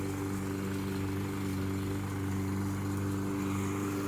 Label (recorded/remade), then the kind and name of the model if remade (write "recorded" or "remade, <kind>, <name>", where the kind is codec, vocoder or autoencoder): recorded